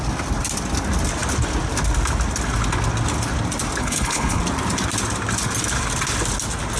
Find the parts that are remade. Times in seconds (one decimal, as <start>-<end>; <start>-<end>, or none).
3.8-4.4